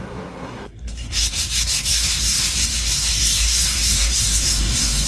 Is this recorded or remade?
remade